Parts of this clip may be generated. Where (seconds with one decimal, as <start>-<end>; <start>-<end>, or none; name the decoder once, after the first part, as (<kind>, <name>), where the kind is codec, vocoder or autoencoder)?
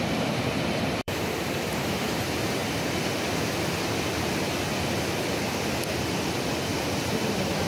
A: 0.0-2.6 (vocoder, BigVGAN v2); 6.1-7.7